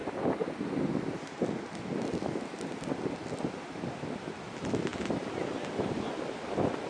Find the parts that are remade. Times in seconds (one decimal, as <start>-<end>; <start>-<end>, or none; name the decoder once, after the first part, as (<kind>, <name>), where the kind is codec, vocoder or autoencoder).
none